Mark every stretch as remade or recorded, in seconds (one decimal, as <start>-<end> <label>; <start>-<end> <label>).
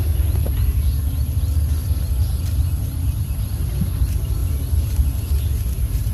0.0-6.1 recorded